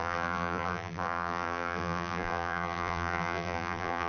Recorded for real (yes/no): no